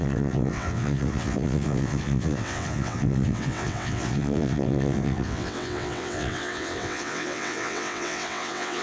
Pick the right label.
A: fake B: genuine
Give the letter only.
A